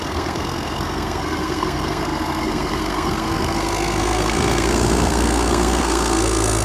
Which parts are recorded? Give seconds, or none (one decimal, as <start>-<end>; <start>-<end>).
none